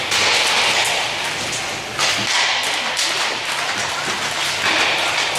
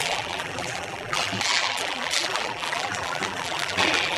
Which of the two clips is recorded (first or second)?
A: first